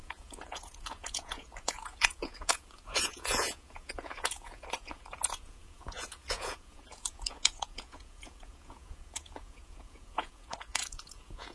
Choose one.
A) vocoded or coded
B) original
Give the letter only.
A